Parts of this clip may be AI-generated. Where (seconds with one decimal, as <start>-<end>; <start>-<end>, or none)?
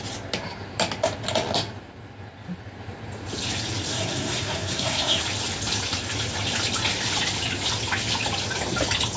3.9-5.2